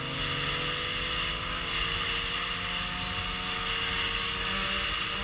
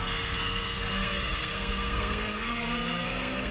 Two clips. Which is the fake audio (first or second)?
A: second